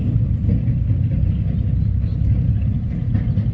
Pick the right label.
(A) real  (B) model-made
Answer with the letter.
A